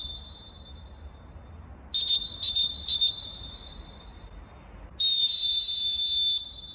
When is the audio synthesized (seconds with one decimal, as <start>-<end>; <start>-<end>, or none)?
0.0-1.2; 5.2-6.0

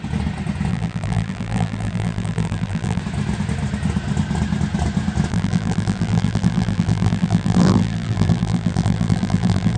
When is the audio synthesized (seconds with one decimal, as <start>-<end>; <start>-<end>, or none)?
0.7-3.0; 5.3-9.8

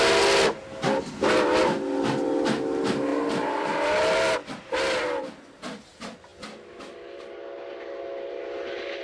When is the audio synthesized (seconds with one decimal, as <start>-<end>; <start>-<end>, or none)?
none

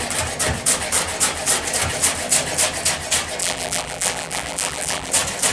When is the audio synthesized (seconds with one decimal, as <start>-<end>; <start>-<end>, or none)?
3.4-5.1

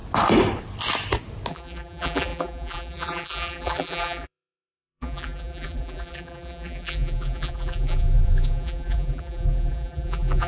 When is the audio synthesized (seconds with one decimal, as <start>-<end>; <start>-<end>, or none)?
1.5-10.5

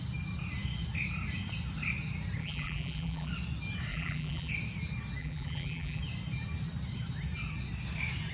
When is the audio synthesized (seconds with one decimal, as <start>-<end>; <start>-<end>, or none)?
2.4-3.3; 3.9-4.5; 5.2-6.0